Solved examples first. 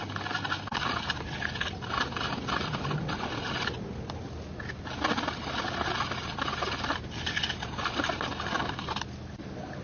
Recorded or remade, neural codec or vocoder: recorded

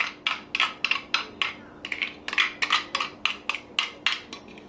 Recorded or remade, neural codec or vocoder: recorded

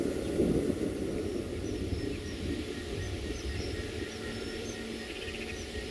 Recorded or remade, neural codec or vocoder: recorded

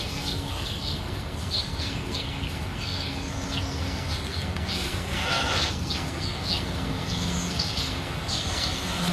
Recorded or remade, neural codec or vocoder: remade, codec, SNAC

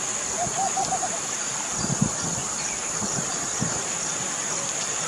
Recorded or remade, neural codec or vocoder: remade, vocoder, BigVGAN v2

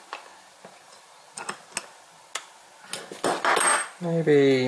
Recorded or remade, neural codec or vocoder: recorded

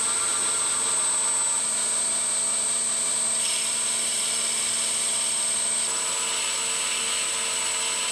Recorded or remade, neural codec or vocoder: recorded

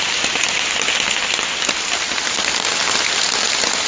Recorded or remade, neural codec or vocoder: recorded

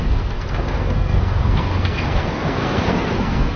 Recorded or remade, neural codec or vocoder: remade, codec, SNAC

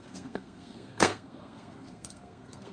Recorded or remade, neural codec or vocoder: remade, codec, SNAC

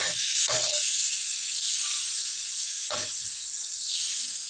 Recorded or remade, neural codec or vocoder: remade, codec, SNAC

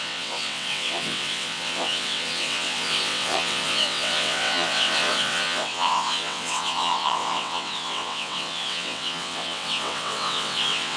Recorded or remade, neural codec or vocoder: remade, vocoder, WaveNeXt